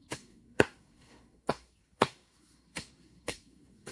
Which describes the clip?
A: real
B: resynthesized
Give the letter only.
B